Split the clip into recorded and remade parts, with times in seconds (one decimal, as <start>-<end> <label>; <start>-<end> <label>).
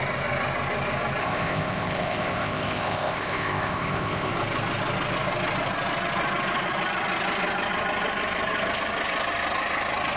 0.0-1.2 recorded; 1.2-4.3 remade; 4.3-10.2 recorded